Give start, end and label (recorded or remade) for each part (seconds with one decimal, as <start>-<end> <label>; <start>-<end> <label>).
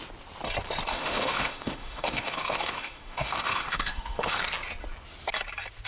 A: 0.0-0.9 recorded; 0.9-4.4 remade; 4.4-5.9 recorded